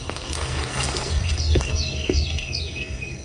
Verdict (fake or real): fake